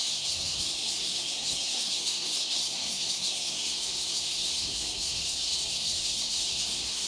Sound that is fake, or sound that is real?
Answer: fake